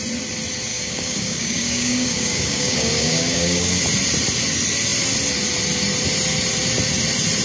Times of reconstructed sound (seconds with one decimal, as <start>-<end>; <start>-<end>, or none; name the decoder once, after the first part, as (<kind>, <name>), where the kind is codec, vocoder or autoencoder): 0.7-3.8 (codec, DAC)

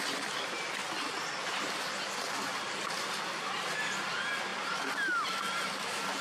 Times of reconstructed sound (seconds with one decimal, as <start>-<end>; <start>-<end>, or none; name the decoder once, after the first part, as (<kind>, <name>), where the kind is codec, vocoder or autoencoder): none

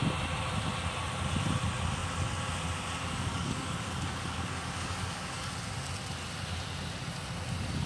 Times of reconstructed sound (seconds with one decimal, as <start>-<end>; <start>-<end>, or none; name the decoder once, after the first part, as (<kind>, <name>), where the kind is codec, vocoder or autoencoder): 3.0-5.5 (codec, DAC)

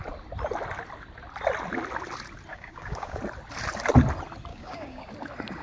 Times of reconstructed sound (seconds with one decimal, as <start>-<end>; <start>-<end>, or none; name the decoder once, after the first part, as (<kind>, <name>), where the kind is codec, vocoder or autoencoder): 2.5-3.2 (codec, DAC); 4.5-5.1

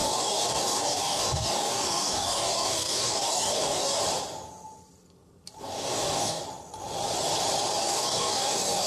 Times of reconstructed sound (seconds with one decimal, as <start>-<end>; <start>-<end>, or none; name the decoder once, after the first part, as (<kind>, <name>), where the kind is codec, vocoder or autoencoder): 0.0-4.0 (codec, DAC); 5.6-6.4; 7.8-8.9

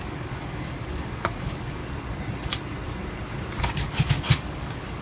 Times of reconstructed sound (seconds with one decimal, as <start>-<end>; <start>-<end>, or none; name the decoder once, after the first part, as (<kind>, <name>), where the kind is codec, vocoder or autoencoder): 0.0-1.8 (codec, DAC); 3.6-5.0

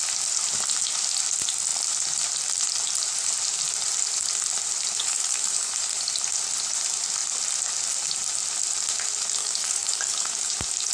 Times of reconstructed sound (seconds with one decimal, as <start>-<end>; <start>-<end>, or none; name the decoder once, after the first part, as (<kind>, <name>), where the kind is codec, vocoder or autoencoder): 5.0-5.7 (codec, DAC); 9.4-10.5